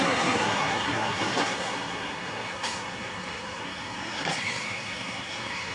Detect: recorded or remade remade